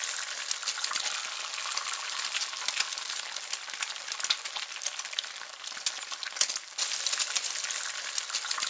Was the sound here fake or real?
real